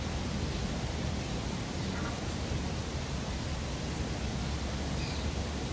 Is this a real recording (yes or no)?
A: yes